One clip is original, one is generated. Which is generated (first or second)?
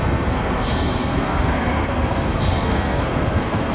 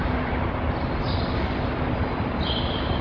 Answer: first